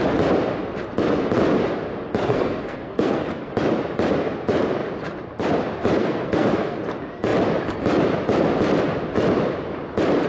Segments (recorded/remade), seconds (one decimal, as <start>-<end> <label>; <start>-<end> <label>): 0.0-2.2 recorded; 2.2-3.5 remade; 3.5-6.0 recorded; 6.0-6.8 remade; 6.8-10.3 recorded